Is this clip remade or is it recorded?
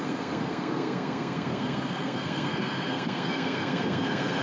remade